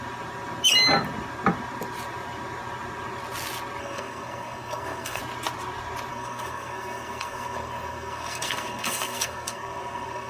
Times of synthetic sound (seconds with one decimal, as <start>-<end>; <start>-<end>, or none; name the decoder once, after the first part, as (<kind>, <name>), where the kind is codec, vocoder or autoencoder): 3.8-5.2 (codec, SNAC); 6.1-10.3